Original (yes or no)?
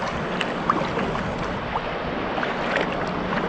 yes